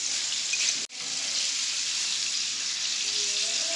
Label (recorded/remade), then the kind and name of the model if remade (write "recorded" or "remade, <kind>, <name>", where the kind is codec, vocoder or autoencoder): recorded